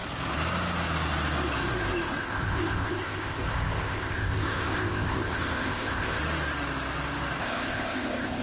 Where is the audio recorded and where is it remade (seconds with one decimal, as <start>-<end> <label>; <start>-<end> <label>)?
0.0-2.2 recorded; 2.2-6.2 remade; 6.2-7.4 recorded; 7.4-8.4 remade

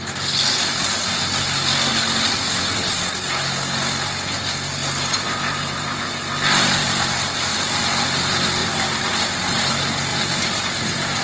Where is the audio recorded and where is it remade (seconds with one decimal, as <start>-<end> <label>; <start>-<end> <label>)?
0.0-4.8 recorded; 4.8-7.8 remade; 7.8-8.6 recorded; 8.6-9.1 remade; 9.1-11.2 recorded

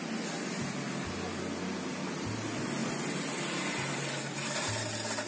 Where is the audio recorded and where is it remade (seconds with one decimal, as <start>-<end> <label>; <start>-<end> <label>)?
0.0-5.3 recorded

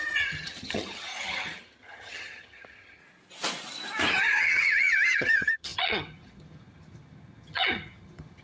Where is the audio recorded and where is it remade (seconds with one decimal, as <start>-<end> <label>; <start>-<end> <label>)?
0.0-3.0 remade; 3.0-4.2 recorded; 4.2-8.4 remade

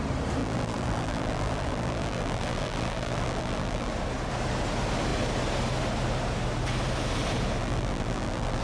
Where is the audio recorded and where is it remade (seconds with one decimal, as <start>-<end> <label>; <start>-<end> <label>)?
0.0-0.4 recorded; 0.4-3.9 remade; 3.9-7.6 recorded; 7.6-8.6 remade

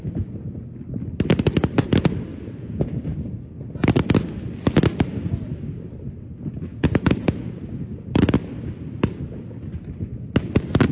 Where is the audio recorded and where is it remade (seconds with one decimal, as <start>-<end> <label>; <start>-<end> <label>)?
0.0-2.3 recorded; 2.3-3.0 remade; 3.0-6.7 recorded; 6.7-7.6 remade; 7.6-10.9 recorded

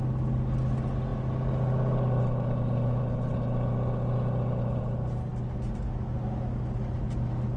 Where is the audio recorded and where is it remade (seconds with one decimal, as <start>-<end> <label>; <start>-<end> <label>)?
0.0-7.6 recorded

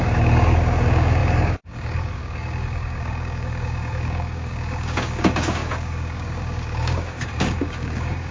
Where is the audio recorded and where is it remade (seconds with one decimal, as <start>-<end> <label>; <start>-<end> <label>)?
0.0-8.3 remade